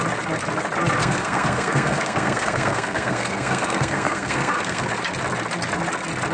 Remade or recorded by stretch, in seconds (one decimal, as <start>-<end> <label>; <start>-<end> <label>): 0.0-1.0 recorded; 1.0-4.8 remade; 4.8-6.3 recorded